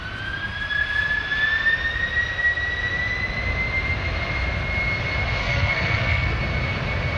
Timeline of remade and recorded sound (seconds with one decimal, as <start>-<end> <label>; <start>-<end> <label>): 0.0-5.4 recorded; 5.4-6.4 remade; 6.4-7.2 recorded